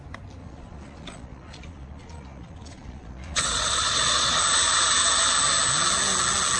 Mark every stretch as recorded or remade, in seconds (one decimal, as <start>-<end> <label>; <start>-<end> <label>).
0.0-0.4 recorded; 0.4-4.4 remade; 4.4-6.6 recorded